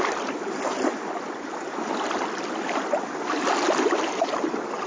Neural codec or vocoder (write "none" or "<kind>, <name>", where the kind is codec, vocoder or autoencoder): none